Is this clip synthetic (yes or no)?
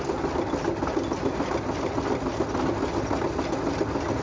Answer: no